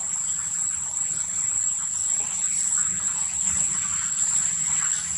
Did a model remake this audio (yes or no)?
no